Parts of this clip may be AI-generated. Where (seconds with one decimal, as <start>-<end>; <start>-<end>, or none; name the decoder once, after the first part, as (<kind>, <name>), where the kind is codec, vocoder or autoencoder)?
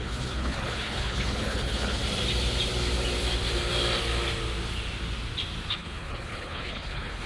0.0-2.0 (codec, HILCodec); 5.7-7.3